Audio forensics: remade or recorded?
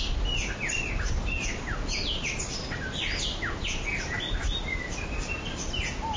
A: recorded